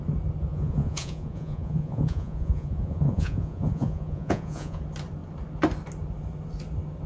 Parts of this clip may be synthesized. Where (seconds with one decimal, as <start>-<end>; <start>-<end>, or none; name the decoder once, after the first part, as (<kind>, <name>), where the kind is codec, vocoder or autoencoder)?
0.5-4.8 (vocoder, Vocos)